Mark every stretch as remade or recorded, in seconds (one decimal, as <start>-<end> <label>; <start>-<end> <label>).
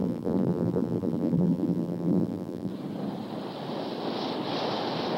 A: 0.0-2.7 remade; 2.7-5.2 recorded